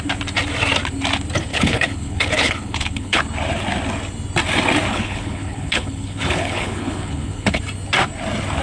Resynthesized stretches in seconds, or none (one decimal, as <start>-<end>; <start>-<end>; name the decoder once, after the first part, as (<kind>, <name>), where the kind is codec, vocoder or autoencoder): 1.5-3.2 (codec, HILCodec); 4.9-7.6